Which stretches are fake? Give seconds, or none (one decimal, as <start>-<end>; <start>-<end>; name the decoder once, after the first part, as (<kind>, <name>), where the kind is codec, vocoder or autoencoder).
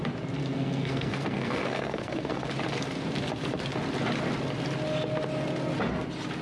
0.4-2.5 (codec, SNAC)